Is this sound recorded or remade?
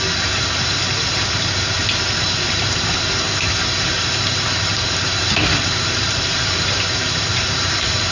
remade